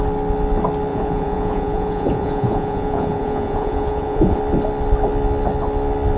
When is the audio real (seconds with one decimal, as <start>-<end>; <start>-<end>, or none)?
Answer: 0.0-0.9; 4.4-6.2